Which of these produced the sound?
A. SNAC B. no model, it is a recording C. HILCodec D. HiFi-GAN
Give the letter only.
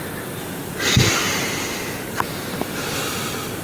B